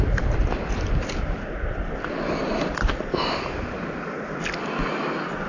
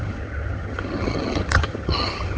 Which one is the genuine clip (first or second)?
first